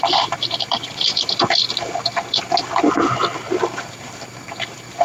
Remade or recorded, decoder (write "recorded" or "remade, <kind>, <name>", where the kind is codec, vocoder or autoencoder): remade, vocoder, BigVGAN v2